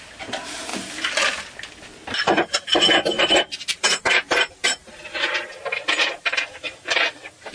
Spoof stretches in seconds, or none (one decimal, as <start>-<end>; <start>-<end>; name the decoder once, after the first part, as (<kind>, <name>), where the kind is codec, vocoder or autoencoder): 0.0-0.7 (vocoder, BigVGAN v2); 3.4-7.5